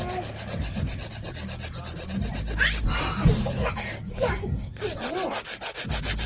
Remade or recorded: recorded